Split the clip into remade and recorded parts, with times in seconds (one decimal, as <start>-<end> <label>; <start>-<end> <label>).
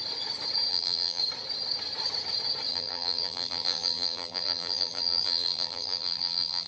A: 0.0-0.7 recorded; 0.7-1.2 remade; 1.2-2.7 recorded; 2.7-6.7 remade